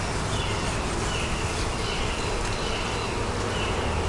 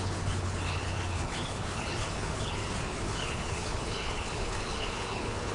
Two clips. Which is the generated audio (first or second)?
second